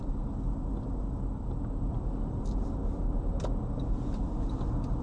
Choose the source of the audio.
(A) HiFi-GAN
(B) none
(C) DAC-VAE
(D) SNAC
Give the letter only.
B